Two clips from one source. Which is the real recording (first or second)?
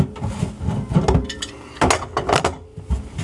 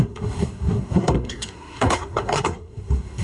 first